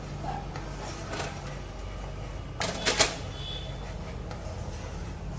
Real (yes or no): yes